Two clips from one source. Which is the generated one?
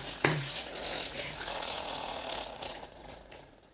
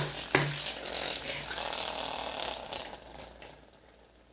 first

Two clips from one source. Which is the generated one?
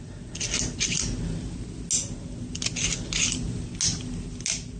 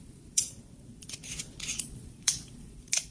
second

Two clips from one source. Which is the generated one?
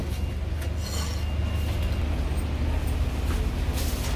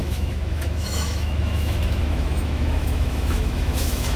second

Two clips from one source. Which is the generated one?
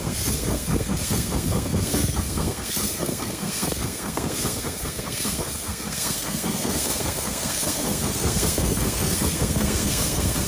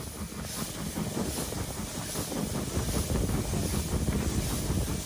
first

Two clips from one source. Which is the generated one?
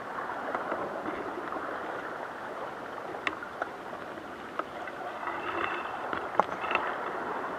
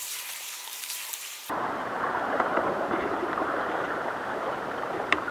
second